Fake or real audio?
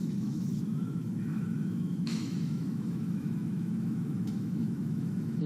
fake